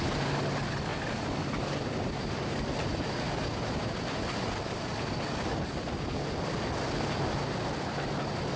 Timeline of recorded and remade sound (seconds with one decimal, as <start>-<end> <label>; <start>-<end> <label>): 0.0-8.6 recorded